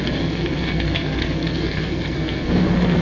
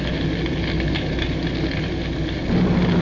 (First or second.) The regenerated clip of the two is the first